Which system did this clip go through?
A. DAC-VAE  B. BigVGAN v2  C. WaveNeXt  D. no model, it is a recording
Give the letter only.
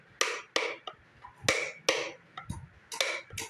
D